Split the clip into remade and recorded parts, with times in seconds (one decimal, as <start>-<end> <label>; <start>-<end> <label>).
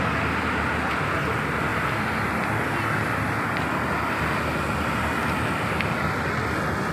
0.0-6.9 recorded